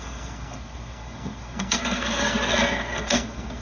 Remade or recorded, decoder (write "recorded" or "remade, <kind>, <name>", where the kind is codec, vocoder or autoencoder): remade, codec, SNAC